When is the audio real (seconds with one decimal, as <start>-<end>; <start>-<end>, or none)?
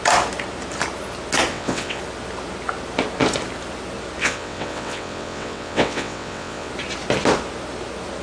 0.0-1.5; 2.0-4.2; 6.7-8.2